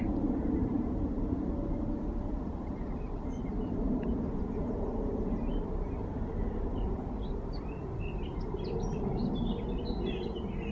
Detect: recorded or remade remade